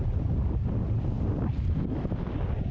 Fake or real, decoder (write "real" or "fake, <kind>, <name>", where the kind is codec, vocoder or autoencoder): real